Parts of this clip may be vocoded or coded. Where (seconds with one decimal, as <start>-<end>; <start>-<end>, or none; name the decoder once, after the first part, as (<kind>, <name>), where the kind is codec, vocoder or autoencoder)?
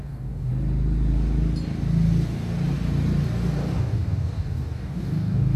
0.0-0.5 (codec, DAC); 3.8-5.6